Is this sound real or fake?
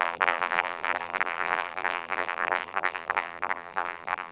fake